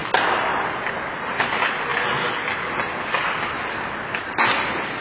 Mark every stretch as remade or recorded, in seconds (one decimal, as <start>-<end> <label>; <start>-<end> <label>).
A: 0.0-5.0 recorded